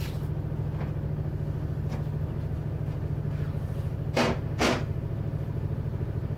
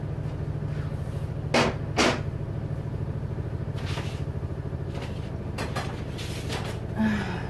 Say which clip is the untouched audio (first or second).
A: second